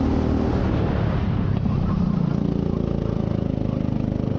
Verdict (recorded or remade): recorded